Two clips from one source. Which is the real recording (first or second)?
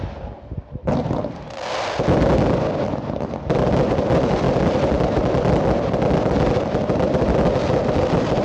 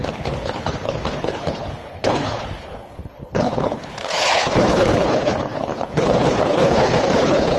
first